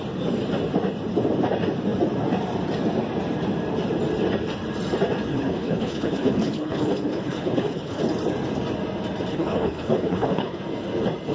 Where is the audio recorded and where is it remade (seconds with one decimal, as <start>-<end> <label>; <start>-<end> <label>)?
0.0-5.3 recorded; 5.3-8.0 remade; 8.0-9.3 recorded; 9.3-10.6 remade; 10.6-11.3 recorded